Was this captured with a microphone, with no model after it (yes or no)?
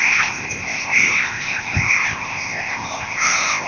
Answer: no